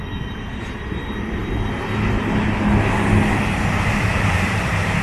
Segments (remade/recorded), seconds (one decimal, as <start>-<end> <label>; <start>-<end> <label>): 0.0-1.4 remade; 1.4-3.9 recorded; 3.9-5.0 remade